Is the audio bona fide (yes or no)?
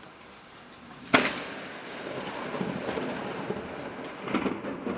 yes